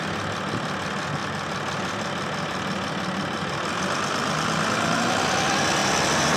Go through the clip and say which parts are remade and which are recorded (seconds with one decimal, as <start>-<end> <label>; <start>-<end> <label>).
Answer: 0.0-1.2 recorded; 1.2-5.0 remade; 5.0-5.8 recorded; 5.8-6.4 remade